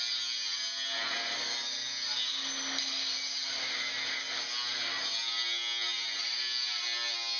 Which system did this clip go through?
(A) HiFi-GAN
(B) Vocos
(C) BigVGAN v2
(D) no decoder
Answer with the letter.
D